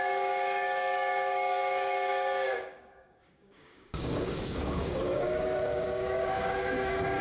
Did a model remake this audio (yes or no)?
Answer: yes